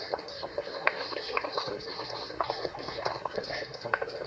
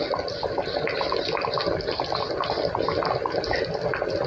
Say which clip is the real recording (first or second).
second